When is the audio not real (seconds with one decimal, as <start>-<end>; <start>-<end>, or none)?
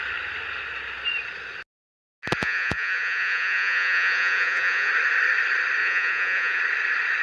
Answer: 2.4-4.9; 5.8-6.6